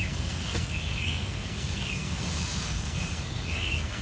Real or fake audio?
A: fake